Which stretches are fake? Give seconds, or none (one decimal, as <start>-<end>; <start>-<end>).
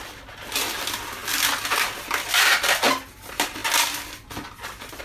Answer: none